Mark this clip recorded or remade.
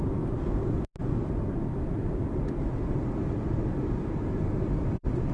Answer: recorded